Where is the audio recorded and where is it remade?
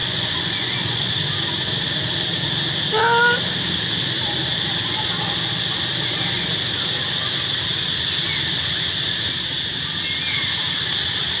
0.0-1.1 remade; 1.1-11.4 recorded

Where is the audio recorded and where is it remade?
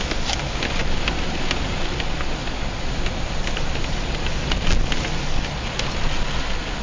0.0-6.8 recorded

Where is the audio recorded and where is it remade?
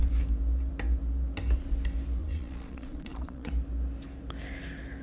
0.0-2.2 recorded; 2.2-3.5 remade; 3.5-5.0 recorded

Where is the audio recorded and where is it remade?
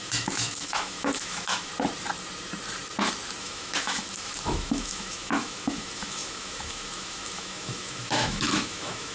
0.0-1.7 remade; 1.7-3.4 recorded; 3.4-9.1 remade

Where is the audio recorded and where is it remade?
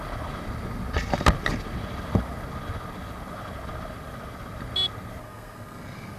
0.0-5.2 recorded; 5.2-6.2 remade